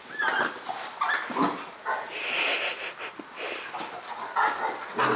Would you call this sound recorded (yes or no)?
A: yes